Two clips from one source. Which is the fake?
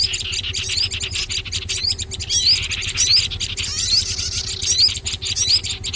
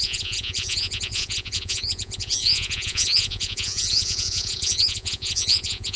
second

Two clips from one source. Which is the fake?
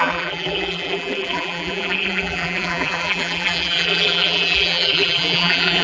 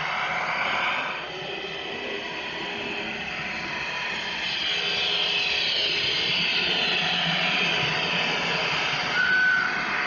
first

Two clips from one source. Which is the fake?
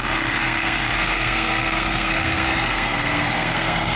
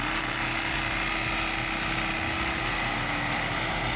first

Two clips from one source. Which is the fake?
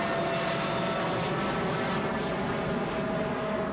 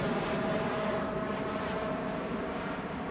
second